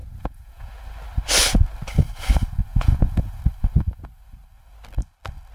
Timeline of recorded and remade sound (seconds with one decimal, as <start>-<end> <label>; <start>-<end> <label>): 0.0-0.8 remade; 0.8-2.7 recorded; 2.7-3.4 remade; 3.4-5.5 recorded